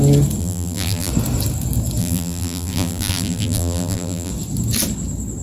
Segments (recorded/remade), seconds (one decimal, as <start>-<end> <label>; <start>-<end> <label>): 0.0-0.4 recorded; 0.4-1.1 remade; 1.1-2.0 recorded; 2.0-4.3 remade; 4.3-5.4 recorded